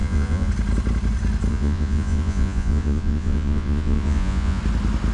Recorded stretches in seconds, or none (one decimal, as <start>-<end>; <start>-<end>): 0.5-1.5; 4.6-5.1